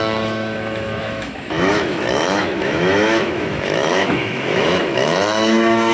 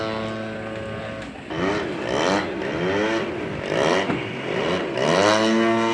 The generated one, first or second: first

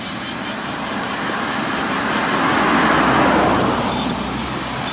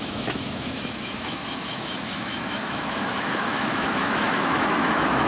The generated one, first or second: second